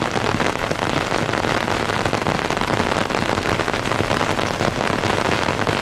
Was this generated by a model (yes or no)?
no